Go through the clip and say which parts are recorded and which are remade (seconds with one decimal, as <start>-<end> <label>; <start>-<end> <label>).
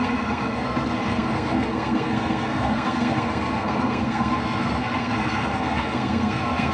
0.0-6.7 remade